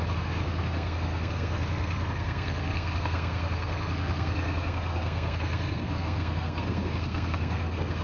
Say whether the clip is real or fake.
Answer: fake